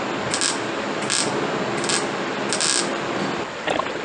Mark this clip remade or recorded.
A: recorded